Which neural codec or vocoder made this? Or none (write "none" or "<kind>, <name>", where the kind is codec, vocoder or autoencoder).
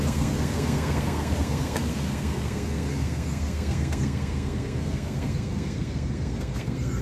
codec, SNAC